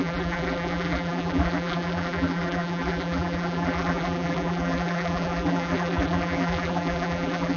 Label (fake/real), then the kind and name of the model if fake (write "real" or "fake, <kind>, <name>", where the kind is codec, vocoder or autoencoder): fake, vocoder, BigVGAN v2